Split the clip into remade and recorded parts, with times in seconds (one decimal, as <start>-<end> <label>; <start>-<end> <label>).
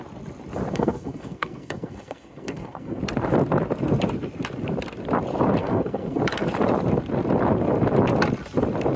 0.0-0.7 recorded; 0.7-3.0 remade; 3.0-5.6 recorded; 5.6-6.2 remade; 6.2-9.0 recorded